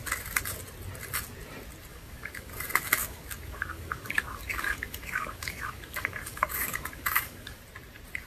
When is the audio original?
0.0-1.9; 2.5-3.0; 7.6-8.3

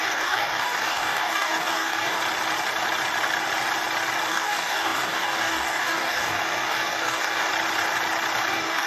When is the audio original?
2.2-4.3; 7.5-8.5

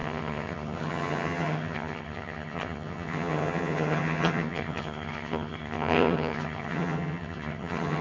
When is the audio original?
none

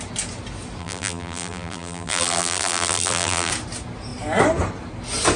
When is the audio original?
0.0-0.8; 3.5-5.4

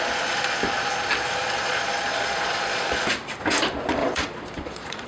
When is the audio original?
0.0-1.4; 3.0-4.0

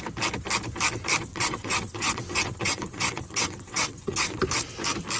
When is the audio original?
0.0-1.3; 4.4-5.2